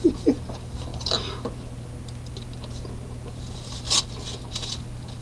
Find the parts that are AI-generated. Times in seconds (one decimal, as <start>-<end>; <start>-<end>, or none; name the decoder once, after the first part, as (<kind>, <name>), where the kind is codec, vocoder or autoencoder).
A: none